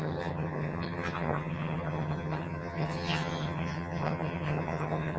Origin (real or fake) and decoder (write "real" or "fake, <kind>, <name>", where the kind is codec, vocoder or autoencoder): fake, vocoder, HiFi-GAN